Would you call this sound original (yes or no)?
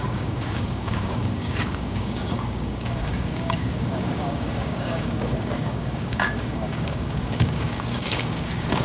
no